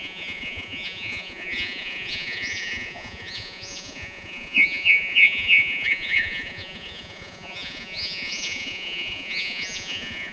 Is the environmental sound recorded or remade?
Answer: remade